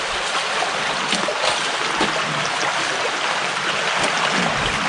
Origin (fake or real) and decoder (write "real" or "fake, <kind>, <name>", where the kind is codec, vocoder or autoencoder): real